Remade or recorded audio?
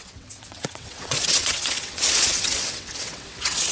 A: remade